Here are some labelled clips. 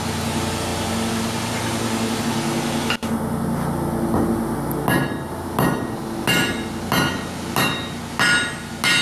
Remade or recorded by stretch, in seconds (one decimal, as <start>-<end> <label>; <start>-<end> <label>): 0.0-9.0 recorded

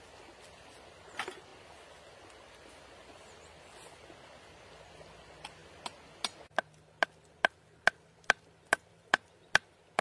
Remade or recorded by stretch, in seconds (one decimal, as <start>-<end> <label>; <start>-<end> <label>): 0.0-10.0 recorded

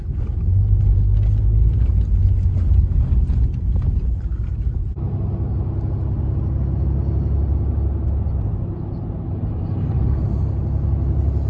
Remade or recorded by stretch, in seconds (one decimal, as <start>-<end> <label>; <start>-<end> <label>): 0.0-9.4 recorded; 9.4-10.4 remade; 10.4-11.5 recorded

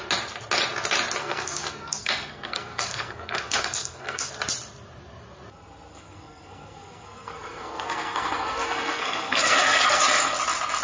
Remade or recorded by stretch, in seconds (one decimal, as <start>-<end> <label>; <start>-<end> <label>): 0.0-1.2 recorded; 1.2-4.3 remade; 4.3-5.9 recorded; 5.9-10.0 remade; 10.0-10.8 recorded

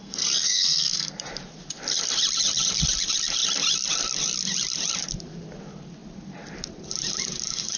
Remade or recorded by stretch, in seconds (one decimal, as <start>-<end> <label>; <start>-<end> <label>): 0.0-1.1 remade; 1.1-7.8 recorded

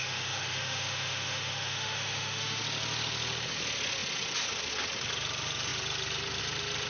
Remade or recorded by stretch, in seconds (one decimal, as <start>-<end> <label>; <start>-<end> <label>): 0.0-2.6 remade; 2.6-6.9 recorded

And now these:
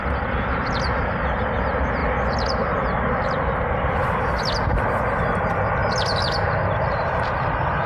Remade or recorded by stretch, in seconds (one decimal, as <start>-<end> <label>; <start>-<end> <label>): 0.0-7.9 recorded